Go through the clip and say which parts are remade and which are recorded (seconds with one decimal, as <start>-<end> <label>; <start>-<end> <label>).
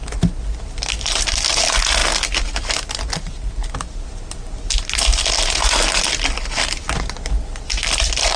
0.0-8.4 recorded